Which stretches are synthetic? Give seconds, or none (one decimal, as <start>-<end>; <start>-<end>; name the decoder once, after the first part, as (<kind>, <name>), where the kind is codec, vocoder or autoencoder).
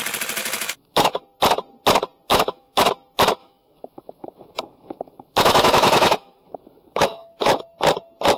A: 0.4-1.2 (autoencoder, DAC-VAE); 2.3-2.9; 3.4-7.6